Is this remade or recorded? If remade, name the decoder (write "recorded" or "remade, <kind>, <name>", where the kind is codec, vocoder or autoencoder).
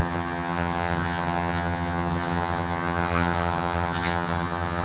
remade, vocoder, HiFi-GAN